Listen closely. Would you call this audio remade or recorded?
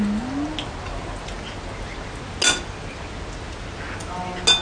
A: recorded